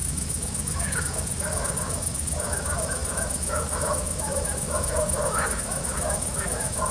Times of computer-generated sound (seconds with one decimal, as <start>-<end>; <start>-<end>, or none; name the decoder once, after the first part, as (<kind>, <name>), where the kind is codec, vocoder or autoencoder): 0.0-6.9 (autoencoder, DAC-VAE)